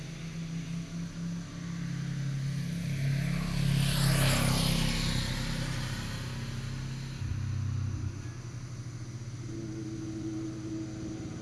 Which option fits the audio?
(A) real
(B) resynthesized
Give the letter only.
A